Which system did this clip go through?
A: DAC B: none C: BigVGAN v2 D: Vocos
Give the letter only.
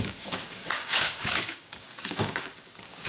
A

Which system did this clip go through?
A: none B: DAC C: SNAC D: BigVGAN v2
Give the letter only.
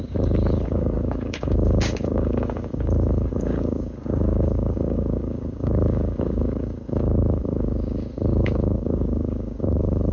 B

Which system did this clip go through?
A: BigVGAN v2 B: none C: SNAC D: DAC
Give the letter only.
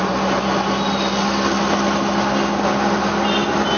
B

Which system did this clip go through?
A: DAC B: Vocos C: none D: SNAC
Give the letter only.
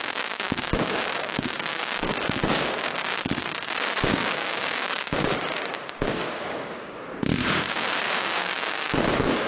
A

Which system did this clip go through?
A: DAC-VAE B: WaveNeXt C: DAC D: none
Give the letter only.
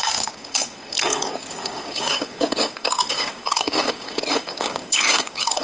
C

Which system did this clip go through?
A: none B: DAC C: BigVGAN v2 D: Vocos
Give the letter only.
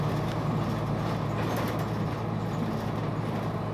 A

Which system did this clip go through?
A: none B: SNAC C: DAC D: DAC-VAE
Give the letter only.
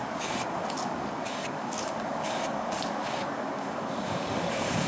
C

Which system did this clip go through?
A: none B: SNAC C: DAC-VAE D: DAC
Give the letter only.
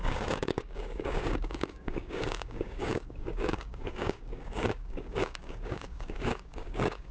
D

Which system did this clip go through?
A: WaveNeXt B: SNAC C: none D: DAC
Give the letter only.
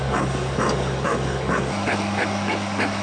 D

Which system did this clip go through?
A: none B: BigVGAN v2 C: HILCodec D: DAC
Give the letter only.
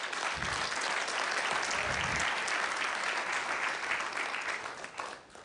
A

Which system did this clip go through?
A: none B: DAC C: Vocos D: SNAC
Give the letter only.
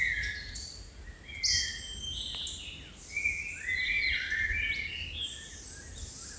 A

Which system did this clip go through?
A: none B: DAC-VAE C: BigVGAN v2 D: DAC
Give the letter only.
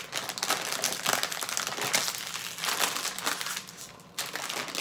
A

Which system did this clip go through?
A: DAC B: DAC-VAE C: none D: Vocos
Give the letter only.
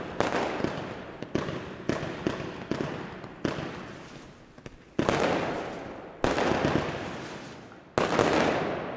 C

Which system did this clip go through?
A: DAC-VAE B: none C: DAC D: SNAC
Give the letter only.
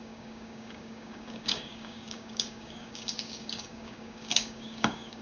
C